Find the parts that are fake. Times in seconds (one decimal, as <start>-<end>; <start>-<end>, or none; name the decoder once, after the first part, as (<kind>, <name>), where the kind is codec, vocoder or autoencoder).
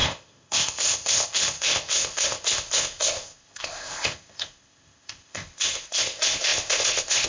0.0-7.3 (codec, ZipCodec)